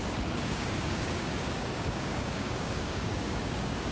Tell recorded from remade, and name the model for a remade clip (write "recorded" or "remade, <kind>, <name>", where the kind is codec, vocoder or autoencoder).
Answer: remade, codec, DAC